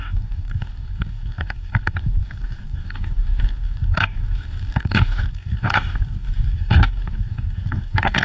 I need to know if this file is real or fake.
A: fake